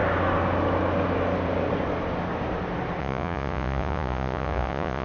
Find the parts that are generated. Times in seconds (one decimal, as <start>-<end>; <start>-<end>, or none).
3.0-5.0